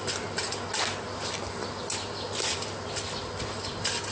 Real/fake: real